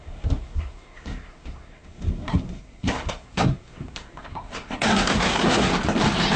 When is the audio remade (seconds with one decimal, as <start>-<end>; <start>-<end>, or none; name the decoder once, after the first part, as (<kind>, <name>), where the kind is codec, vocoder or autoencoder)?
0.0-5.7 (codec, SNAC)